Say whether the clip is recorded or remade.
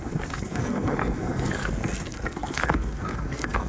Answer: remade